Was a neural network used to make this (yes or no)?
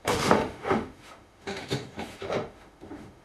yes